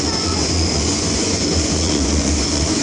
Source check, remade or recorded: remade